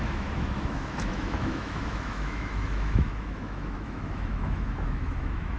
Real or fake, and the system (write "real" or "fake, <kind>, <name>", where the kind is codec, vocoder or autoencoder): fake, autoencoder, DAC-VAE